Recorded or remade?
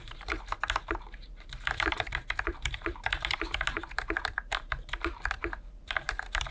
remade